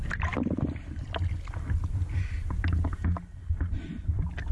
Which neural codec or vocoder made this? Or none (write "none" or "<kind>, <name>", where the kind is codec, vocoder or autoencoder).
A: none